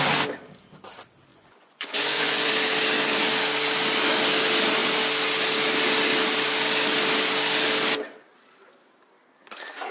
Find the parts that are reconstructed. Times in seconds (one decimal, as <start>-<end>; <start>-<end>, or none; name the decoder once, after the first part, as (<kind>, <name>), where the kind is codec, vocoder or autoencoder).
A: 1.3-2.5 (vocoder, Vocos)